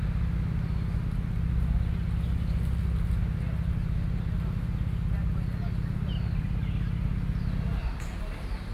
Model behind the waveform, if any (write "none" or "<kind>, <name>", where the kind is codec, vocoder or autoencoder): none